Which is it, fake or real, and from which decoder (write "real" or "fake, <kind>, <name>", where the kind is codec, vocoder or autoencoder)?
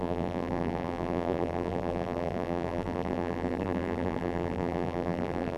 fake, vocoder, BigVGAN v2